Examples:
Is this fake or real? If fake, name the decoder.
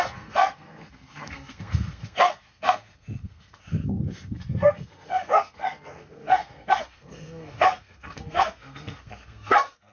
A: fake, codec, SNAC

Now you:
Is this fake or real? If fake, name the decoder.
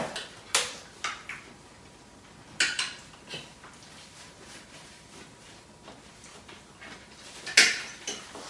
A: real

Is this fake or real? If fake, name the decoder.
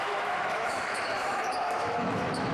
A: fake, autoencoder, DAC-VAE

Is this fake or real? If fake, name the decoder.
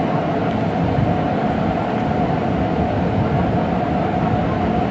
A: real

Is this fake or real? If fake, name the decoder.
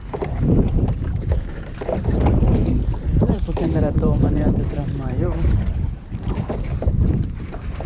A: fake, vocoder, BigVGAN v2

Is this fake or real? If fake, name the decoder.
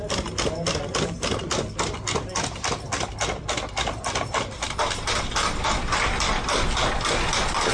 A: real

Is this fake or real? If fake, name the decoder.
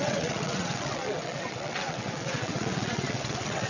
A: fake, vocoder, WaveNeXt